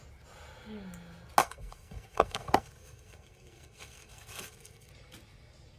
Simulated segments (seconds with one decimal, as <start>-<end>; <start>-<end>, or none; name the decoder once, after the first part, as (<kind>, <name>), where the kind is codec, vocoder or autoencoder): 1.4-4.9 (codec, SNAC)